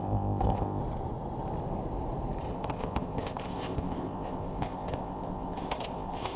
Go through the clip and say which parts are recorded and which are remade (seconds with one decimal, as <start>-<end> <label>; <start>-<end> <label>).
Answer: 0.0-0.8 remade; 0.8-2.5 recorded; 2.5-6.4 remade